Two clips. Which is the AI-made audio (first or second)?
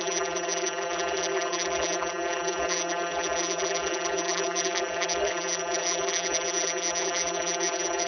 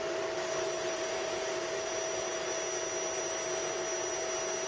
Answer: first